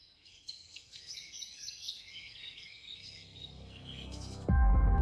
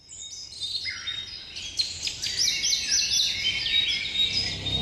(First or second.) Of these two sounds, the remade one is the first